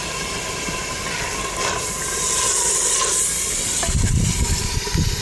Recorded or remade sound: recorded